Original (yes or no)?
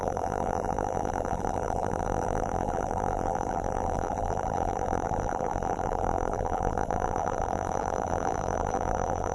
no